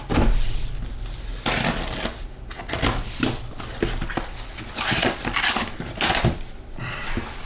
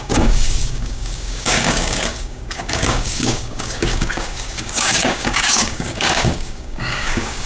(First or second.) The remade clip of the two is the second